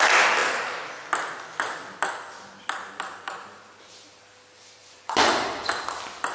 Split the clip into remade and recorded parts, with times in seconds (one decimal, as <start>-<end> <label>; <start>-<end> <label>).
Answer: 0.0-4.8 recorded; 4.8-5.3 remade; 5.3-6.3 recorded